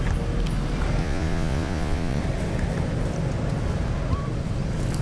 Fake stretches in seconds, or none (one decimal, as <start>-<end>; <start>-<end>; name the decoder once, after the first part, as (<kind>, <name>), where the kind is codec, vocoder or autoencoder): 1.0-2.2 (vocoder, Vocos)